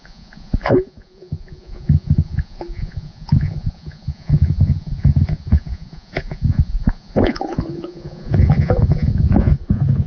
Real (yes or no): no